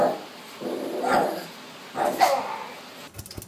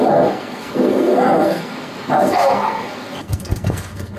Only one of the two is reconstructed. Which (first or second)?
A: second